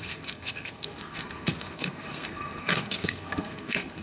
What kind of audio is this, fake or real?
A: fake